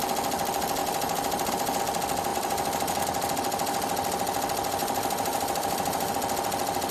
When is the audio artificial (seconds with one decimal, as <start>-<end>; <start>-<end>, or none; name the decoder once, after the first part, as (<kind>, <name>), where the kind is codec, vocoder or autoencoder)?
0.8-1.8 (vocoder, BigVGAN v2); 2.3-3.0; 4.8-6.1